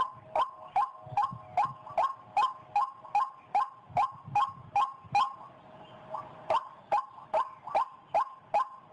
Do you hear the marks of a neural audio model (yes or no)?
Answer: no